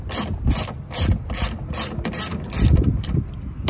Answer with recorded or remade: remade